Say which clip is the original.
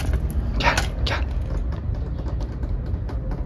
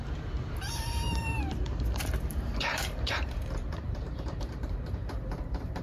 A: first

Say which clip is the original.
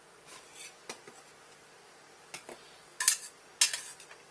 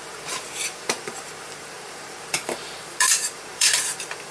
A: first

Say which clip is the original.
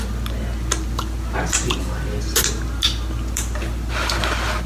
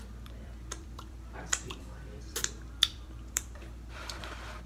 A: first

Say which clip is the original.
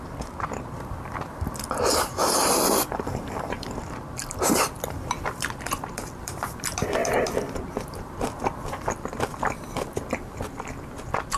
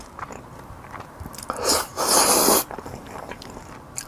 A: second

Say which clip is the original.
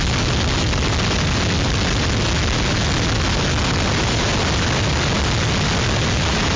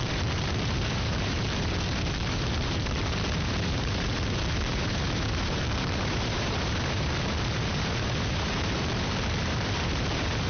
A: first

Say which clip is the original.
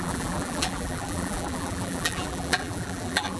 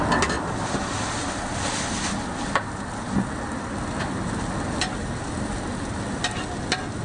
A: second